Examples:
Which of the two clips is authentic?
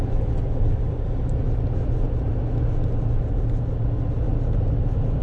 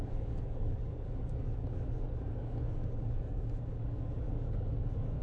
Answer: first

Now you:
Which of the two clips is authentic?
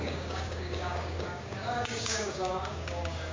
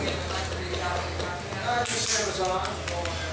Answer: second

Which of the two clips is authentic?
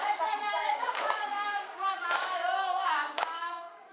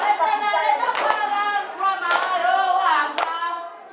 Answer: second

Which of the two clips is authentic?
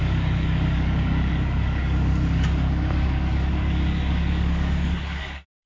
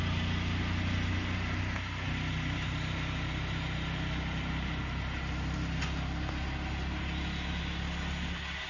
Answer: second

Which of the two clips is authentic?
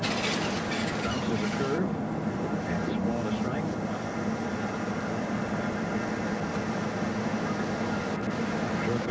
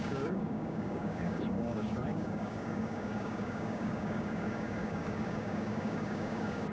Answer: first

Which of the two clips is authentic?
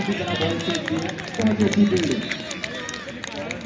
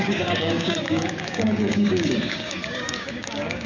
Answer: first